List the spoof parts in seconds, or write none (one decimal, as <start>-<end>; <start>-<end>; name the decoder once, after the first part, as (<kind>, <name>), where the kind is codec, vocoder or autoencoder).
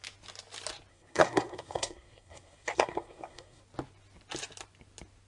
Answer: 0.9-3.6 (codec, SNAC)